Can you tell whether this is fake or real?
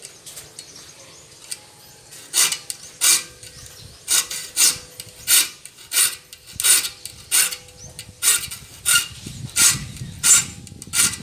real